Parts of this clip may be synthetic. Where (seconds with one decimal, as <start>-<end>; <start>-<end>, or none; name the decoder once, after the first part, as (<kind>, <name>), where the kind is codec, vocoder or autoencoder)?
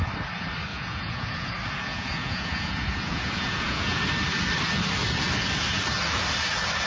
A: 0.7-1.5 (vocoder, Vocos); 1.9-4.0